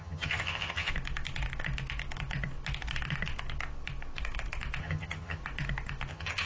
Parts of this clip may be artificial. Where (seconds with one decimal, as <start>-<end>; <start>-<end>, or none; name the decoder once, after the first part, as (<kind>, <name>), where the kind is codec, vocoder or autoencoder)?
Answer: 0.0-0.9 (vocoder, HiFi-GAN); 4.8-5.4; 6.1-6.5